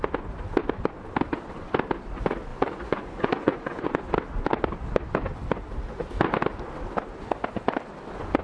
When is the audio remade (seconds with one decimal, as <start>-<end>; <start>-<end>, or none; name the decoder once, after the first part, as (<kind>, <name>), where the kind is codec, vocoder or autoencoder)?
2.5-3.8 (vocoder, Vocos)